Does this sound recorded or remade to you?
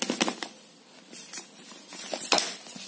recorded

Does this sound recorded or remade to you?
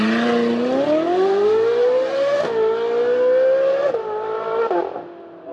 recorded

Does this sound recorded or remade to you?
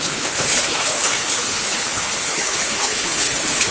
remade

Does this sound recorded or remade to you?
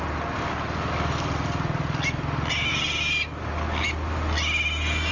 recorded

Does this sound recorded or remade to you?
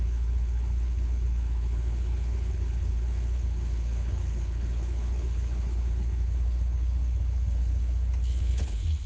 remade